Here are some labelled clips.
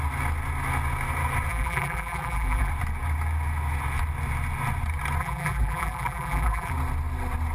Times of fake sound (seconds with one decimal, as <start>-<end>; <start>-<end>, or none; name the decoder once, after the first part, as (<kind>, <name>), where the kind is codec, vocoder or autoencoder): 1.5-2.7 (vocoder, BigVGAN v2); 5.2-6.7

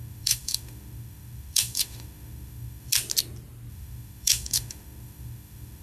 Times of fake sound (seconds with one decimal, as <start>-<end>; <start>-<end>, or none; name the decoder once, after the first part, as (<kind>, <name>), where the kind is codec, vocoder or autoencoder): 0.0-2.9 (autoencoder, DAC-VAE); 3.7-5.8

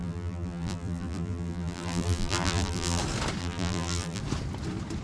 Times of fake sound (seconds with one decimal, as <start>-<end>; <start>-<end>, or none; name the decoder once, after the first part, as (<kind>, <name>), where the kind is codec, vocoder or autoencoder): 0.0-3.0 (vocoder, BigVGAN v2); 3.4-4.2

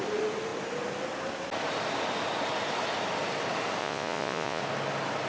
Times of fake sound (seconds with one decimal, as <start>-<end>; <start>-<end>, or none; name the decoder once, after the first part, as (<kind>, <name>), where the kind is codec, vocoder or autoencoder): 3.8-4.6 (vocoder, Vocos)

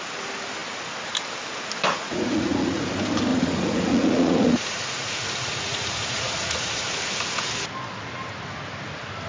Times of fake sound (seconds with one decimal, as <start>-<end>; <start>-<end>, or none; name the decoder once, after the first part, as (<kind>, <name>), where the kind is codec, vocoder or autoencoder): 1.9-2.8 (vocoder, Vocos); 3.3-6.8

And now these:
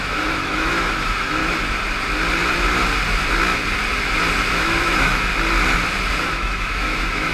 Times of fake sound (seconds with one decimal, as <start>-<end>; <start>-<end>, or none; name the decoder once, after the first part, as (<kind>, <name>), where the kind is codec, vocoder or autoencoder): 0.0-1.4 (autoencoder, DAC-VAE); 4.5-5.3; 6.2-7.3